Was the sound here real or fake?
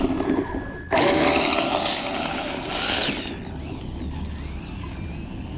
real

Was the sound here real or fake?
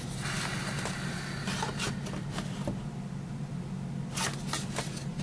real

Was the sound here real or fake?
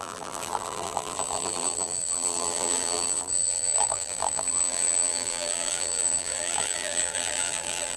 fake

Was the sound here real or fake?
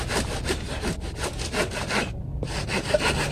real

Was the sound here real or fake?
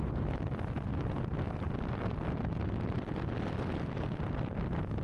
real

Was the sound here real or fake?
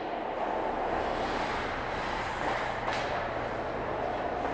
real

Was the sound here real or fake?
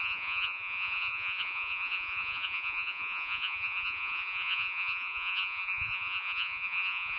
fake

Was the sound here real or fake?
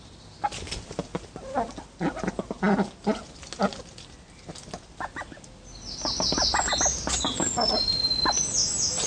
real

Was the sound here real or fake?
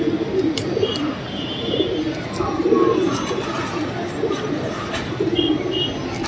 real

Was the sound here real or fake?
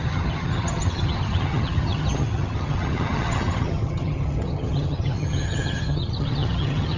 fake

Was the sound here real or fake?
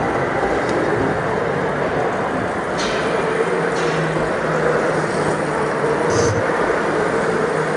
real